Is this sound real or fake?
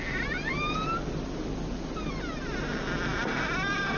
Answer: real